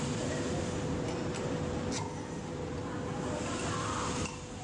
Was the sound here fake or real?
real